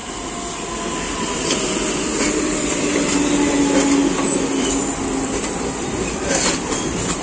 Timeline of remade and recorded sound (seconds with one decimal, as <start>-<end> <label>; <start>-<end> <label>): 0.0-7.2 recorded